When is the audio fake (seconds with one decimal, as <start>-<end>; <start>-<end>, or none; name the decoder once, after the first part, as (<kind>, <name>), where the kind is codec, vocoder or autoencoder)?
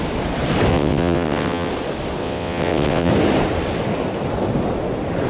0.7-1.7 (vocoder, WaveNeXt); 2.2-3.1